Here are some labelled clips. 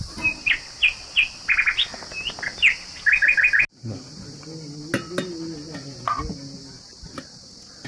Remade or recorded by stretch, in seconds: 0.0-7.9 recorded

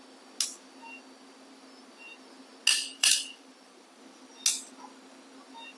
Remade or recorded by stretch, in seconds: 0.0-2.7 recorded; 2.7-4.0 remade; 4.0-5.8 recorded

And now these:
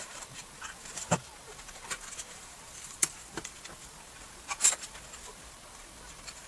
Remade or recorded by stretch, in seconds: 0.0-0.4 remade; 0.4-1.1 recorded; 1.1-3.2 remade; 3.2-5.3 recorded; 5.3-6.5 remade